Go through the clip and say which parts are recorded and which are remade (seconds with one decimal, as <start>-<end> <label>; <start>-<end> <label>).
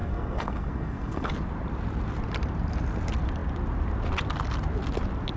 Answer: 0.0-1.3 remade; 1.3-5.4 recorded